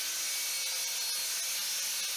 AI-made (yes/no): no